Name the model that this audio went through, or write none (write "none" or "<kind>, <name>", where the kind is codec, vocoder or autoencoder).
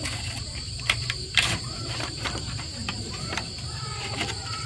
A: vocoder, BigVGAN v2